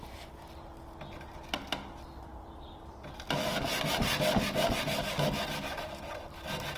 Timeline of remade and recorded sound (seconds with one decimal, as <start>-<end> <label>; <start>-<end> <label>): 0.0-2.3 recorded; 2.3-3.1 remade; 3.1-6.8 recorded